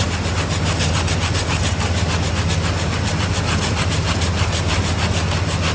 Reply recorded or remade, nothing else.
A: recorded